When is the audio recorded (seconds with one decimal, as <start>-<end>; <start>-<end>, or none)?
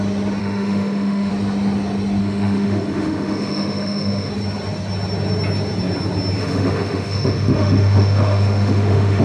0.0-0.4; 1.3-2.2; 4.3-6.4